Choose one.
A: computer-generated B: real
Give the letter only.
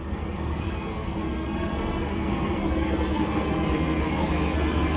A